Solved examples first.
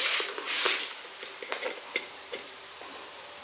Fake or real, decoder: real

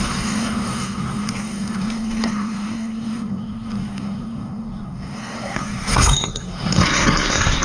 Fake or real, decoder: fake, codec, SNAC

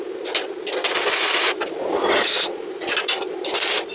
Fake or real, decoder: real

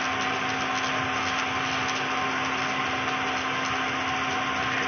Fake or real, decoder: real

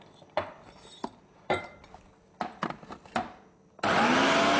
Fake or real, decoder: real